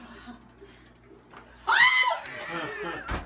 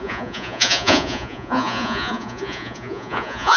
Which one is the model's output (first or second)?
second